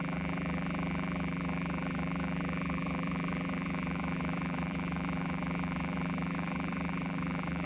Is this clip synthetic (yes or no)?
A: yes